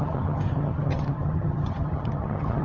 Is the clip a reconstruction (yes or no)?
yes